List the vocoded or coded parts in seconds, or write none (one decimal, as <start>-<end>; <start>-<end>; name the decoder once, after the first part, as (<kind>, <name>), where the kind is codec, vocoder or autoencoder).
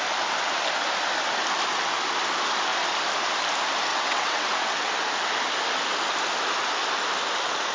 3.9-4.9 (vocoder, WaveNeXt)